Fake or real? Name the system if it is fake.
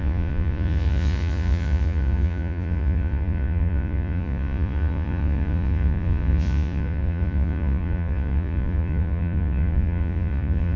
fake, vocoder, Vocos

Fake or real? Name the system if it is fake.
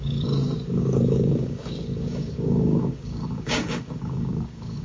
fake, codec, DAC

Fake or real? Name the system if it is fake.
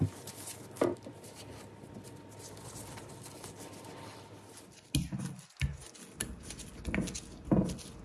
real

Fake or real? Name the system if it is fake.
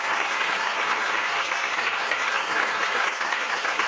fake, codec, SNAC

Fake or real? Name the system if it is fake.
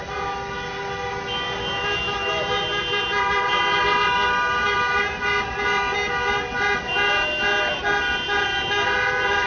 real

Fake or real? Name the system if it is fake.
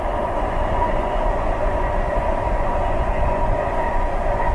fake, vocoder, Vocos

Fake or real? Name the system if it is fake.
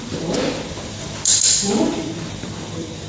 fake, vocoder, BigVGAN v2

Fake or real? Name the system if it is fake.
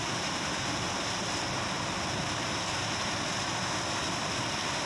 real